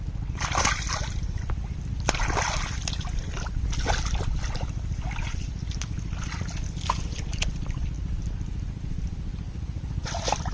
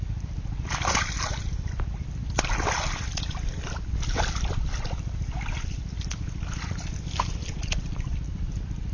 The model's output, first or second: second